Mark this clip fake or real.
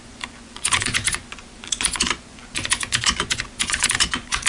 fake